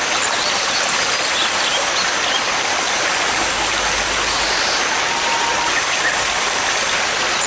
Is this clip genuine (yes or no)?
yes